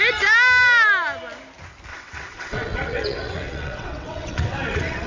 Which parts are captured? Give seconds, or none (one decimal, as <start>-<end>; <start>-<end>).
0.0-1.9